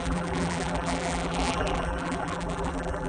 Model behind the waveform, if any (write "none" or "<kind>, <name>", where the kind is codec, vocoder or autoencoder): vocoder, BigVGAN v2